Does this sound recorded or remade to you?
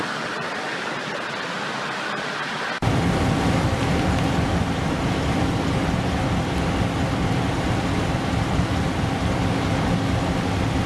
recorded